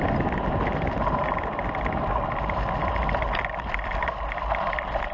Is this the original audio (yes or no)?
yes